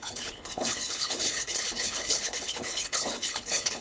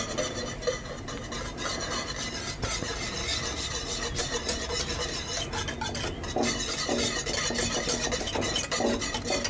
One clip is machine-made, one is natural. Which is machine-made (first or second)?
first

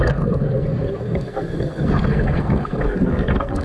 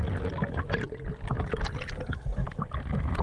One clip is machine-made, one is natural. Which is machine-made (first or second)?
first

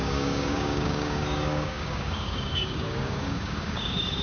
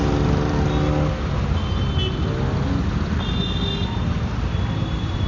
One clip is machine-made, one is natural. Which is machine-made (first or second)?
first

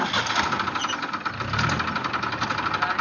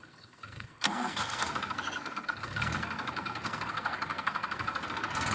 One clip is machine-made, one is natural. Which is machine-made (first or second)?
second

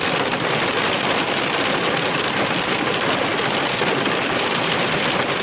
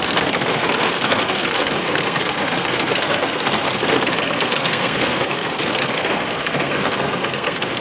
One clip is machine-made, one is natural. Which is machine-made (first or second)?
second